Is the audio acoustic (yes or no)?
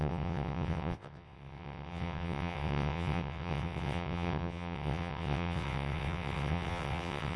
no